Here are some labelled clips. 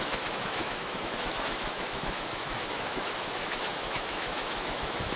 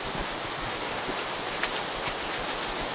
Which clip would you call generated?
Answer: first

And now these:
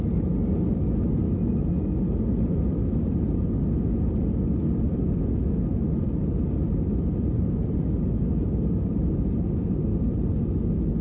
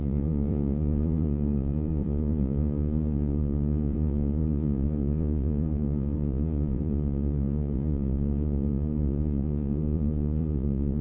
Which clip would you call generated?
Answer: second